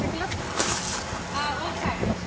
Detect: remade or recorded recorded